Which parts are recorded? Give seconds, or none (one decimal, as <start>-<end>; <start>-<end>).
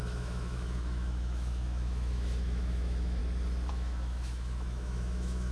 3.2-3.7